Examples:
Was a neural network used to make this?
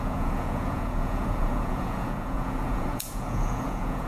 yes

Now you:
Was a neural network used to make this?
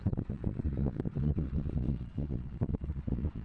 yes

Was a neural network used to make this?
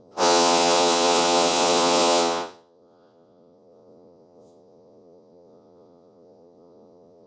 yes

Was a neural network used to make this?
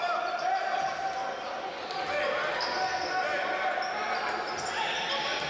no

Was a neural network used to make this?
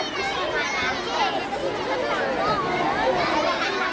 no